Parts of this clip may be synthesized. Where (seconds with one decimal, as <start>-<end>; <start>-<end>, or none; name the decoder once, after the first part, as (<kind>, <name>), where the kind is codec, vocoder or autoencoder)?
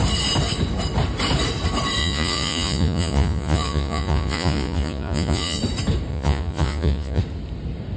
2.0-5.6 (vocoder, Vocos); 6.1-7.2